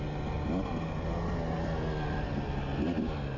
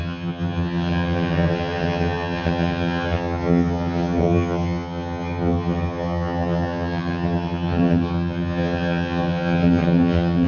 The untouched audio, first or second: first